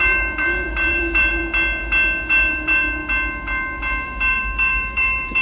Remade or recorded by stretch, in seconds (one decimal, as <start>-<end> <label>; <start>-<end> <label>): 0.0-1.4 remade; 1.4-2.3 recorded; 2.3-3.0 remade; 3.0-3.8 recorded; 3.8-5.4 remade